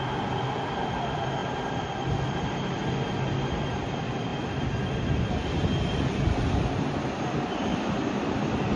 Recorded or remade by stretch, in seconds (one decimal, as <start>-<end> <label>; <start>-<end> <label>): 0.0-2.8 remade; 2.8-3.7 recorded; 3.7-4.3 remade; 4.3-5.2 recorded; 5.2-8.8 remade